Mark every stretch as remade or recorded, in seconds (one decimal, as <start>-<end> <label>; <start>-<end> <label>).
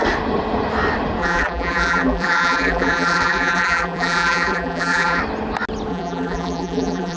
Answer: 0.0-1.2 recorded; 1.2-5.2 remade; 5.2-5.9 recorded; 5.9-7.2 remade